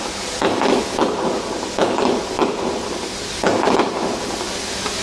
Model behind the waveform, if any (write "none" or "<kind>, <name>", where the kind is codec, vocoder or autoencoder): none